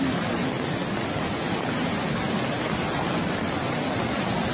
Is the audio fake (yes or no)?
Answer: no